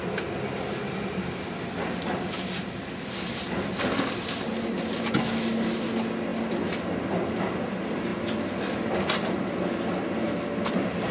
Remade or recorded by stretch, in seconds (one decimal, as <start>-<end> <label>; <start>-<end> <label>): 0.0-11.1 recorded